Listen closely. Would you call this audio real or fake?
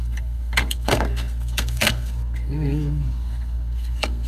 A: fake